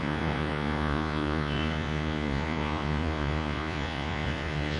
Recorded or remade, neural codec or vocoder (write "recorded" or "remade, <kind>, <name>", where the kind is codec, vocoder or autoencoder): remade, vocoder, Vocos